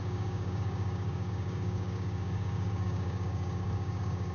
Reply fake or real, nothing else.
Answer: fake